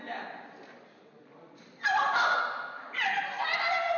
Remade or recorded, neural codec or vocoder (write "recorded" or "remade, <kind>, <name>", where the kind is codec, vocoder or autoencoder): recorded